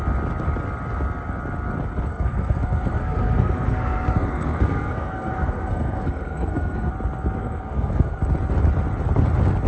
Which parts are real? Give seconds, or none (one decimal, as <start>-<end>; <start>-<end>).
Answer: 0.0-2.1; 6.9-7.4; 8.2-9.7